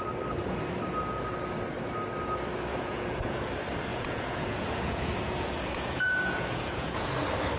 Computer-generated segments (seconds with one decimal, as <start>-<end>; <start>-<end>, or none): 2.7-3.5; 3.9-7.1